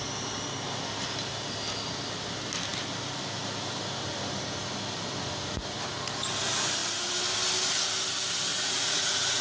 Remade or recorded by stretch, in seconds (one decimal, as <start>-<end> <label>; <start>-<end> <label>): 0.0-8.5 recorded; 8.5-9.4 remade